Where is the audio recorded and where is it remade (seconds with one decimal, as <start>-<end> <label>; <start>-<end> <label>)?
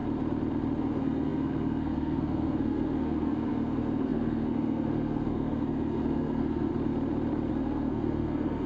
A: 0.0-0.8 recorded; 0.8-6.7 remade; 6.7-7.5 recorded; 7.5-8.7 remade